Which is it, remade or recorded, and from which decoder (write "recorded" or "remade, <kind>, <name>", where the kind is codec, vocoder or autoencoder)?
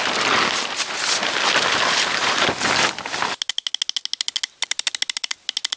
recorded